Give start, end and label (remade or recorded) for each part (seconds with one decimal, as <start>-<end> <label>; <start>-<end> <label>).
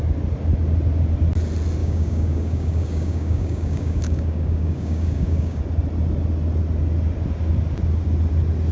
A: 0.0-1.8 recorded; 1.8-5.6 remade; 5.6-8.7 recorded